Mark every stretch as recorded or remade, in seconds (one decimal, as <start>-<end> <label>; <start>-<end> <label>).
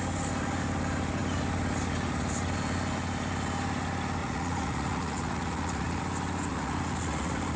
0.0-4.2 recorded; 4.2-6.0 remade; 6.0-6.5 recorded; 6.5-7.6 remade